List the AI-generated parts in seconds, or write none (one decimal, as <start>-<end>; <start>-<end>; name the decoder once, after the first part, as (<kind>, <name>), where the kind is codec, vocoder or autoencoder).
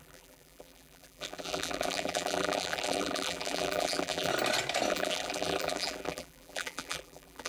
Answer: 0.0-4.3 (vocoder, BigVGAN v2); 4.9-7.5